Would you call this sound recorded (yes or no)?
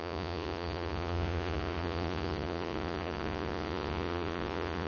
no